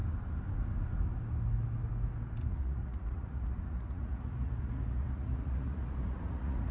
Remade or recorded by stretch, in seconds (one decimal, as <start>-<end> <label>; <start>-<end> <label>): 0.0-2.4 recorded; 2.4-6.7 remade